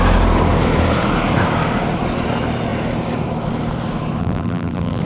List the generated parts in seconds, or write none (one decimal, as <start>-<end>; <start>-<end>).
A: 4.2-5.0